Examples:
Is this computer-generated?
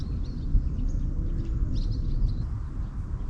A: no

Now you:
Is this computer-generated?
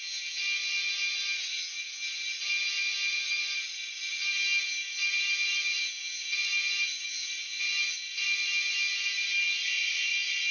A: no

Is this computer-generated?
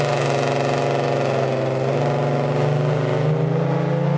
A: no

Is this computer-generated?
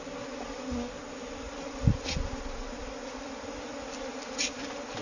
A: no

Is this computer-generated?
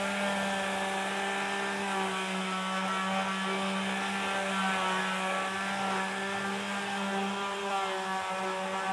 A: no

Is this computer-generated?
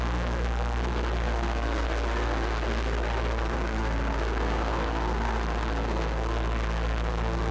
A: yes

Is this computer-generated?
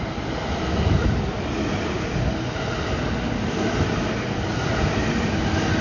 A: no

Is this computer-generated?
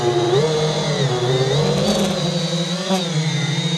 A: no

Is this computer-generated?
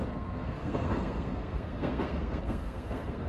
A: yes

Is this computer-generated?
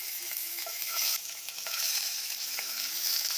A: yes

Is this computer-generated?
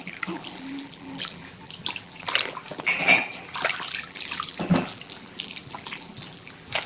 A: yes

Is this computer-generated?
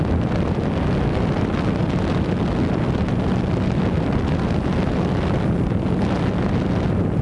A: no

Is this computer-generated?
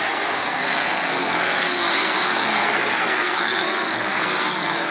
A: yes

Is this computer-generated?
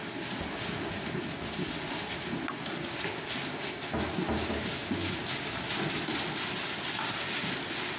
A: no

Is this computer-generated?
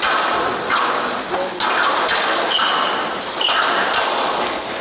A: no